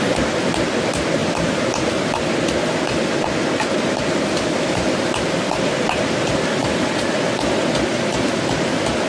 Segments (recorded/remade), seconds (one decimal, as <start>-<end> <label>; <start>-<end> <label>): 0.0-1.2 recorded; 1.2-2.2 remade; 2.2-6.6 recorded; 6.6-7.5 remade; 7.5-9.1 recorded